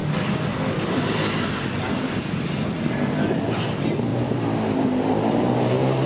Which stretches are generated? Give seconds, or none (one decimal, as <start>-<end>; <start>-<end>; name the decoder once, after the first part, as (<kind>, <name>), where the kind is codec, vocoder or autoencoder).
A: 4.1-6.1 (vocoder, BigVGAN v2)